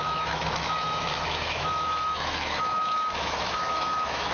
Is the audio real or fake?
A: fake